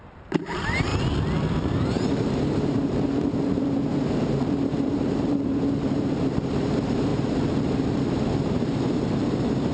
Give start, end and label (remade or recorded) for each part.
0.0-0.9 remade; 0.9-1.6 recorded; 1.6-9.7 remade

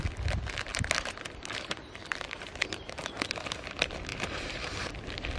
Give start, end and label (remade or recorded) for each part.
0.0-0.7 recorded; 0.7-3.2 remade; 3.2-4.1 recorded; 4.1-4.9 remade; 4.9-5.4 recorded

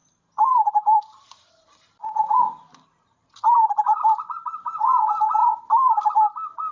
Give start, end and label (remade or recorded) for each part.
0.0-4.0 remade; 4.0-5.4 recorded; 5.4-6.7 remade

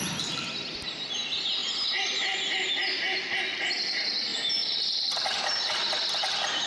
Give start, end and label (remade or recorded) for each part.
0.0-4.3 recorded; 4.3-5.6 remade; 5.6-6.7 recorded

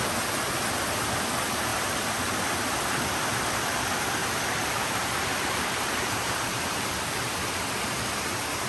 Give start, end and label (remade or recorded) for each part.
0.0-4.2 recorded; 4.2-7.1 remade; 7.1-8.7 recorded

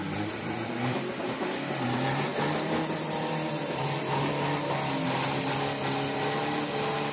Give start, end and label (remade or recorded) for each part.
0.0-1.3 remade; 1.3-2.3 recorded; 2.3-4.3 remade; 4.3-7.1 recorded

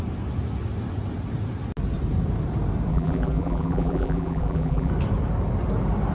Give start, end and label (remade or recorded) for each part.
0.0-2.9 recorded; 2.9-4.9 remade; 4.9-6.1 recorded

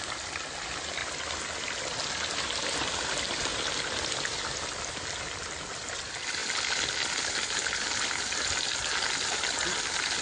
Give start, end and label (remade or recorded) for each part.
0.0-10.2 recorded